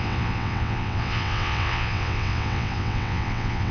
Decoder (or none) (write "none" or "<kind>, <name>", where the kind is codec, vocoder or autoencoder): vocoder, WaveNeXt